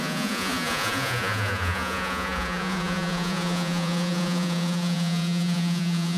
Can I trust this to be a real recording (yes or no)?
no